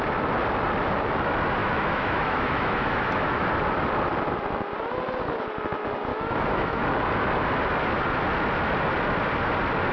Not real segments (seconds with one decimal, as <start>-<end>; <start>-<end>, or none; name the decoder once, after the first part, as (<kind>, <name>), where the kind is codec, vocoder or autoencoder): 1.6-3.5 (autoencoder, DAC-VAE); 6.1-6.8